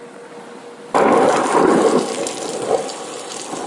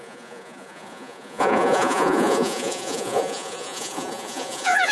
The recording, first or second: first